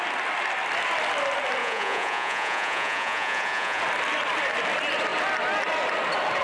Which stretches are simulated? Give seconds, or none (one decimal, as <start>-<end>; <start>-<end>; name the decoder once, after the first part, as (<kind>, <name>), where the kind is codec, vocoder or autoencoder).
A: 1.6-3.8 (vocoder, Vocos)

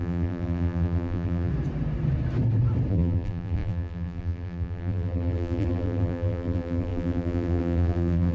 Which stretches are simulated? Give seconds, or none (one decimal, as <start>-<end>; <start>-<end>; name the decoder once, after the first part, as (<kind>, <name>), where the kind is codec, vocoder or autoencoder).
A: 0.0-1.5 (vocoder, BigVGAN v2); 2.9-8.3

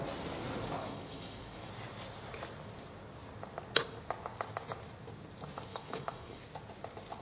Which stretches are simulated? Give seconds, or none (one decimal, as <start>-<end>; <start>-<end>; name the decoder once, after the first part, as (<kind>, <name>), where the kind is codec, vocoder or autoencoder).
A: 0.8-1.7 (autoencoder, DAC-VAE); 5.7-6.4

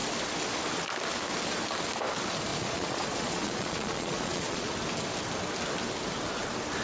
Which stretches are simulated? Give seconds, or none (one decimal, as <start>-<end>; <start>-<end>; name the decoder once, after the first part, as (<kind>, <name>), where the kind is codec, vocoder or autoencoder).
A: 2.5-4.7 (vocoder, Vocos)

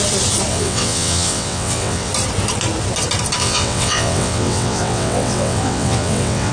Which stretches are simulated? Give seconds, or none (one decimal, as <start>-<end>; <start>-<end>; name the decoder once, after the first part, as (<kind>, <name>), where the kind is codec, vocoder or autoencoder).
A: 0.5-2.1 (vocoder, WaveNeXt); 3.4-6.5

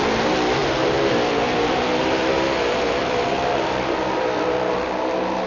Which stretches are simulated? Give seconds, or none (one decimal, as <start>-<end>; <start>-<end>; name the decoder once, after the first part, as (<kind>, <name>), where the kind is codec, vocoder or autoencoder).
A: none

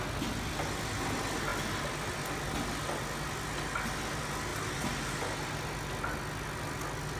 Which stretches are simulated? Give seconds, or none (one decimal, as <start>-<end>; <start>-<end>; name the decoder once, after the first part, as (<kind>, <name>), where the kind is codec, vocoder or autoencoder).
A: none

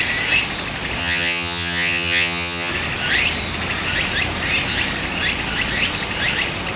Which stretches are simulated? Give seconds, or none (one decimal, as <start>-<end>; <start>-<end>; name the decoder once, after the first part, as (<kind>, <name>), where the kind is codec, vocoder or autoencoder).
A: 1.0-2.7 (vocoder, HiFi-GAN)